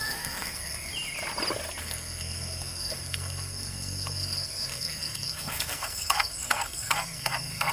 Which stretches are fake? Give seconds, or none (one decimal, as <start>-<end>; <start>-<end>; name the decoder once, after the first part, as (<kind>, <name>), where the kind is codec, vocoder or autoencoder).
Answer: 0.0-0.9 (codec, SNAC); 1.8-7.7